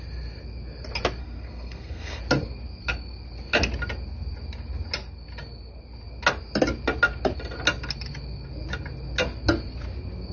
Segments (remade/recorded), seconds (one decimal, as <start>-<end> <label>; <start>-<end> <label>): 0.0-1.2 recorded; 1.2-2.2 remade; 2.2-10.3 recorded